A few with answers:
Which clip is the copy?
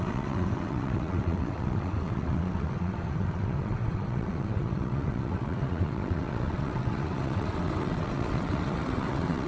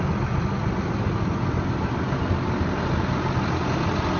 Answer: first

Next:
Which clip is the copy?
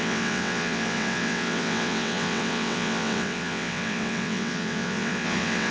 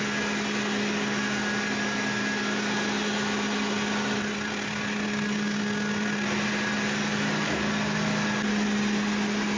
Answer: first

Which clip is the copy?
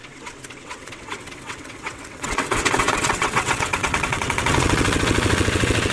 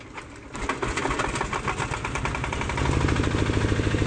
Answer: first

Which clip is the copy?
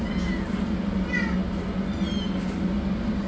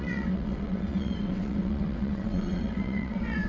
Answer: second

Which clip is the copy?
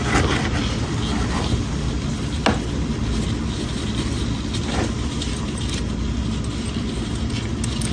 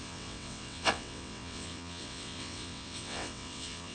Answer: second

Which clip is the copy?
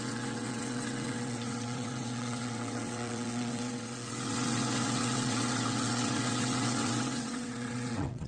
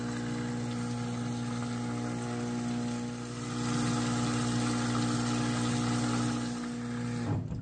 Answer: first